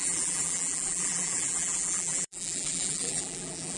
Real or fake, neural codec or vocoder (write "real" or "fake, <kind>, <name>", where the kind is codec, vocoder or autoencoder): fake, vocoder, BigVGAN v2